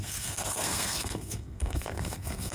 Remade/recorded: remade